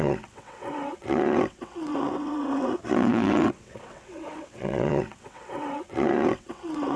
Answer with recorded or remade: remade